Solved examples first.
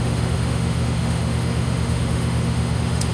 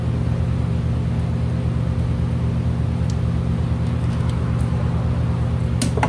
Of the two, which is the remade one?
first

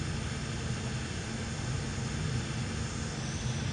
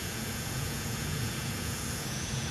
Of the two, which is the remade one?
second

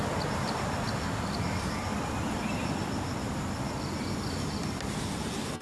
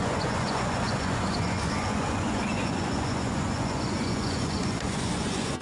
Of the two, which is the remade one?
second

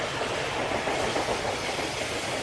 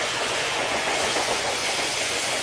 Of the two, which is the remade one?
second